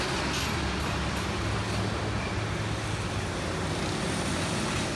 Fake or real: real